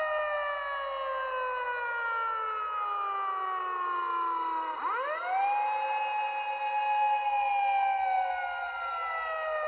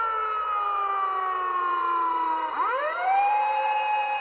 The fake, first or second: second